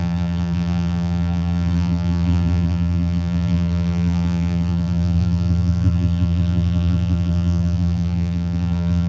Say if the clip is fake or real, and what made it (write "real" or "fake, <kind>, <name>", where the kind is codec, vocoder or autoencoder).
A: fake, vocoder, BigVGAN v2